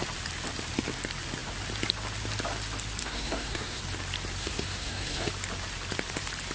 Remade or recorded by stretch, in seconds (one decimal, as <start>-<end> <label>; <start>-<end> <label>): 0.0-3.0 recorded; 3.0-3.8 remade; 3.8-4.4 recorded; 4.4-5.3 remade; 5.3-6.5 recorded